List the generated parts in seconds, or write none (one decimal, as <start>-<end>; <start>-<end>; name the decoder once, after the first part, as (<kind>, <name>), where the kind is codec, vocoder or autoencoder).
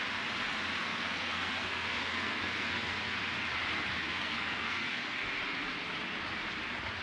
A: 0.8-3.2 (codec, SNAC); 4.0-5.3